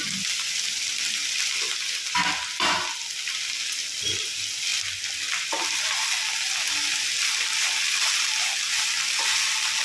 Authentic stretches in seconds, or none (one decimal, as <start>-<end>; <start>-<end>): 0.0-9.8